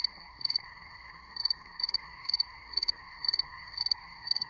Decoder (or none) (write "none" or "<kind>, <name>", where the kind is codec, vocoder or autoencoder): codec, SNAC